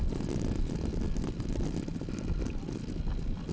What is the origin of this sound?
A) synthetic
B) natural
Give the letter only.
B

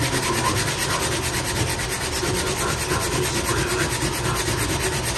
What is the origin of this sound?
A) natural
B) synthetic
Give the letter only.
A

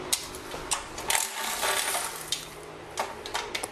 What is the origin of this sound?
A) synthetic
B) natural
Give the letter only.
B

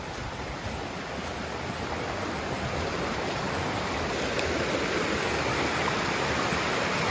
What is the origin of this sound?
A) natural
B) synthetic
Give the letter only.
A